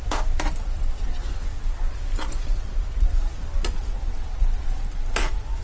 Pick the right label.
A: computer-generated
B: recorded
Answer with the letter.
B